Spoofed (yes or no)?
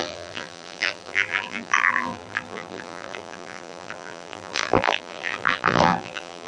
yes